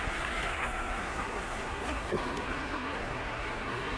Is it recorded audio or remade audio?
remade